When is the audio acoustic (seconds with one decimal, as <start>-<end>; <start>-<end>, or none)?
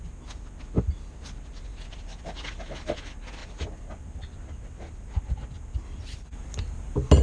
0.0-1.7; 2.5-3.4; 6.6-7.2